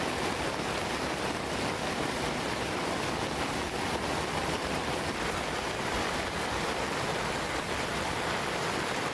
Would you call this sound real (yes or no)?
yes